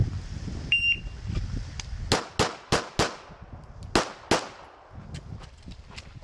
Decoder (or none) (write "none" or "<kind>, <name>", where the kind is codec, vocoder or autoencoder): none